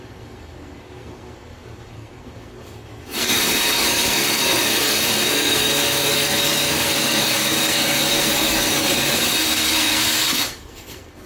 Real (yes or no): no